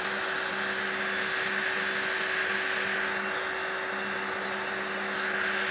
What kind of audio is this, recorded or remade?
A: recorded